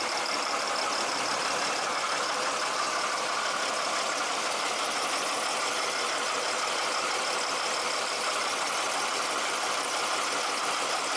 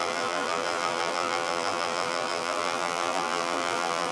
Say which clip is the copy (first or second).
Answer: second